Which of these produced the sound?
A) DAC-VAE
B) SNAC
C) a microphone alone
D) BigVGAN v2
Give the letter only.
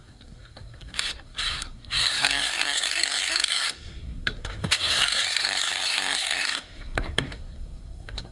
B